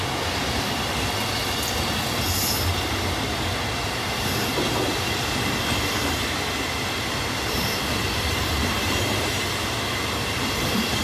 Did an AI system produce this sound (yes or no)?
no